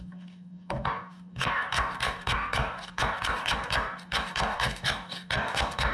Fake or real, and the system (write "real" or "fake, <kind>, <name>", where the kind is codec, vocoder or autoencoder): fake, codec, DAC